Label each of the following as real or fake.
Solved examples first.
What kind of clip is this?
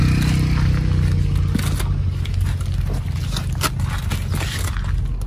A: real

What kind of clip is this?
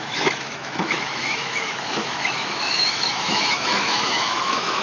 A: fake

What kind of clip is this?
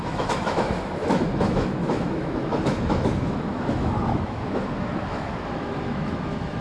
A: fake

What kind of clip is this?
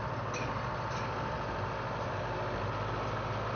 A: real